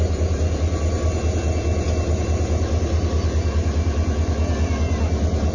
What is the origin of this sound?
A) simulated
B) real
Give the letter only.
B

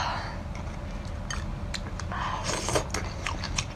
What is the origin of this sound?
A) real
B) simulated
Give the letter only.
A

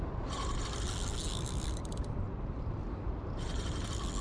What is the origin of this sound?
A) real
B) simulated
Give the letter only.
A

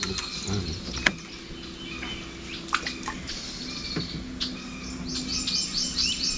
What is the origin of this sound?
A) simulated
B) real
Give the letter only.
B